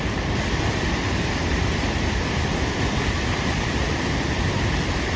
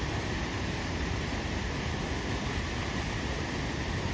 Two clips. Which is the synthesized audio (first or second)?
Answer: first